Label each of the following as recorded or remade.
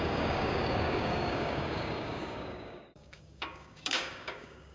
remade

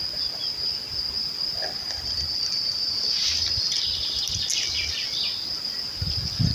recorded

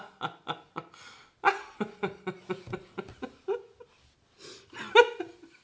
recorded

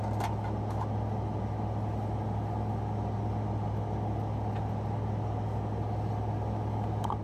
recorded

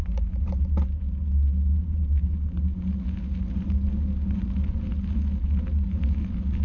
recorded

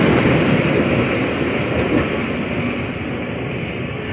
recorded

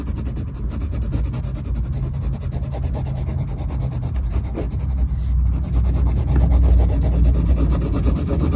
recorded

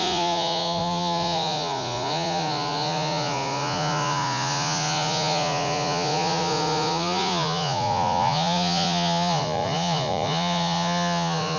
remade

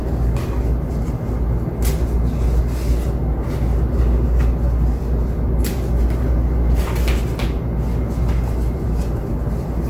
recorded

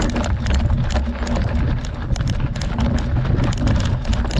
recorded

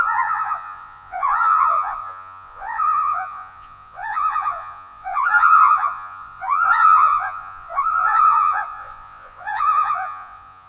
remade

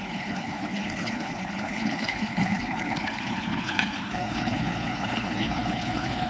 remade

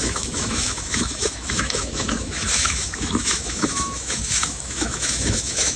remade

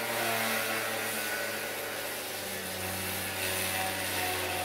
recorded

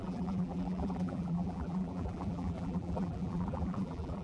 remade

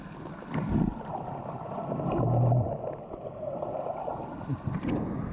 recorded